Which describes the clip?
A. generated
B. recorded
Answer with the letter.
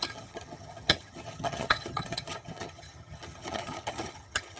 A